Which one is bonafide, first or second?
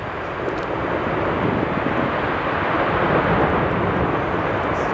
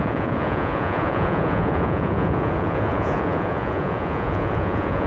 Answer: first